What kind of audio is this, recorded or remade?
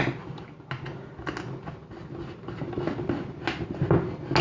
recorded